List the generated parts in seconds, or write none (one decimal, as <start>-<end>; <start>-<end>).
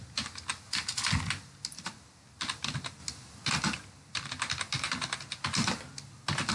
none